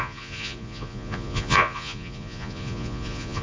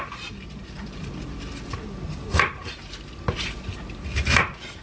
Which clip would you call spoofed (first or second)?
first